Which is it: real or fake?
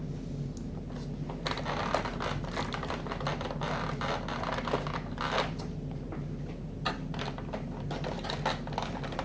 real